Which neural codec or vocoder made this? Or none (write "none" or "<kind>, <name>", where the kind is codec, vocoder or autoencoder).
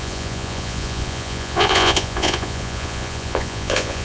vocoder, Vocos